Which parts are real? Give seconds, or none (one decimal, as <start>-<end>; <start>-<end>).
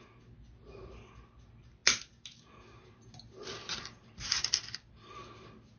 0.0-5.8